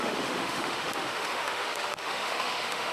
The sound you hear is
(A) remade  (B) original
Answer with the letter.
A